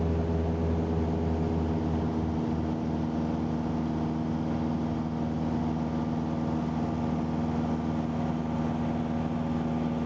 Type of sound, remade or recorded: recorded